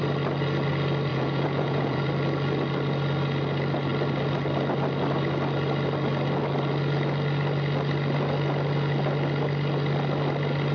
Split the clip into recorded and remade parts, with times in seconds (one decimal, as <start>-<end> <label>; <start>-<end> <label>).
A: 0.0-1.1 recorded; 1.1-2.1 remade; 2.1-10.7 recorded

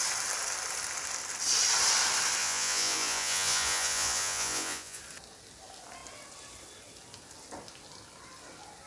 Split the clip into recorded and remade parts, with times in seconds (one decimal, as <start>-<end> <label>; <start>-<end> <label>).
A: 0.0-2.4 recorded; 2.4-5.0 remade; 5.0-8.9 recorded

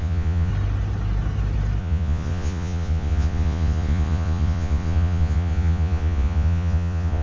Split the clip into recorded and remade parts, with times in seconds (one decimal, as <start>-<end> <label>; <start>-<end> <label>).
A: 0.0-0.5 remade; 0.5-1.8 recorded; 1.8-7.2 remade